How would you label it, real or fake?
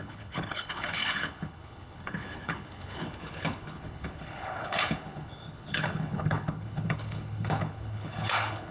fake